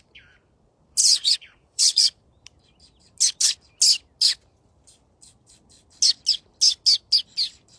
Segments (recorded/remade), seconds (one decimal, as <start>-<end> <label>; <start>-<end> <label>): 0.0-1.0 recorded; 1.0-2.3 remade; 2.3-7.8 recorded